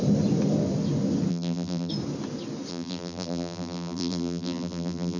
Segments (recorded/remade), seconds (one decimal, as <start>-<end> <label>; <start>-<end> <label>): 0.0-1.3 recorded; 1.3-1.9 remade; 1.9-2.7 recorded; 2.7-5.2 remade